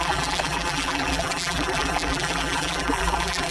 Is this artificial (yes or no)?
yes